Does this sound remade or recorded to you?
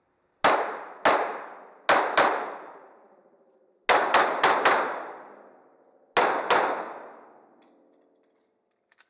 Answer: recorded